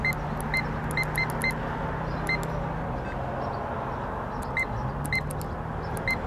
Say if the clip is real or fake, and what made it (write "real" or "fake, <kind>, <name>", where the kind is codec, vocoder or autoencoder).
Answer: real